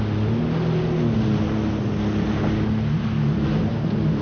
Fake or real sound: real